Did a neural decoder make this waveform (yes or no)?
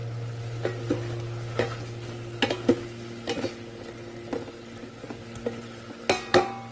no